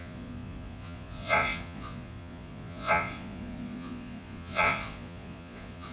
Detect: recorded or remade remade